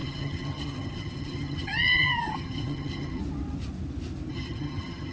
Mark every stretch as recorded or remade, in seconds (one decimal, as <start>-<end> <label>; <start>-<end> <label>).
0.0-3.2 remade; 3.2-4.3 recorded; 4.3-5.1 remade